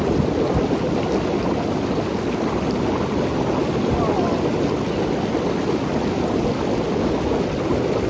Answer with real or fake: real